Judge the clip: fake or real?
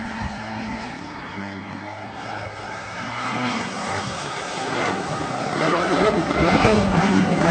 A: fake